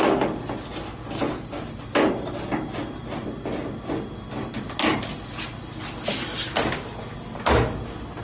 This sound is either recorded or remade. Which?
recorded